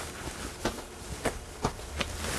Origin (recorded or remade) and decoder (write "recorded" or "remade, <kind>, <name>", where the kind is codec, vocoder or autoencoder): recorded